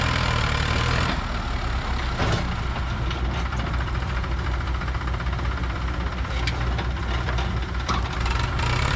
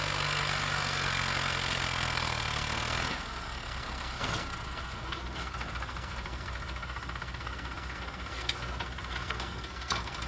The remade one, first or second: second